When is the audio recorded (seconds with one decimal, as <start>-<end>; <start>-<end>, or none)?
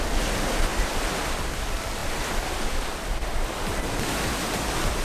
0.0-5.0